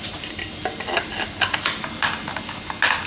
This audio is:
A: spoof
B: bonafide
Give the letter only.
B